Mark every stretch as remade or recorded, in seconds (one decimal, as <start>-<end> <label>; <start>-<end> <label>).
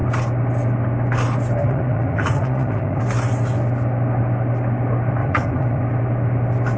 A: 0.0-1.6 recorded; 1.6-3.0 remade; 3.0-5.2 recorded; 5.2-5.8 remade; 5.8-6.8 recorded